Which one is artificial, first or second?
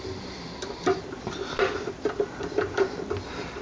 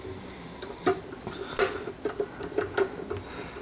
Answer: first